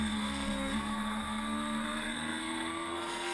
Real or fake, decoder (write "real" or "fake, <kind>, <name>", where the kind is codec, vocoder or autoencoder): fake, codec, SNAC